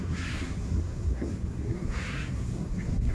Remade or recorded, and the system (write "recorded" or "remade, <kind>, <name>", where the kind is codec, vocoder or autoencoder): remade, codec, SNAC